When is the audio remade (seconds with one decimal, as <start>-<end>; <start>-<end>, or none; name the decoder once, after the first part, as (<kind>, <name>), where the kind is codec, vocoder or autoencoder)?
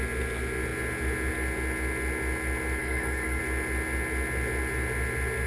2.8-3.4 (codec, DAC)